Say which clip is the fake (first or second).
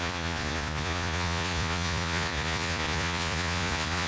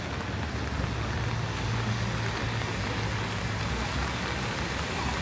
first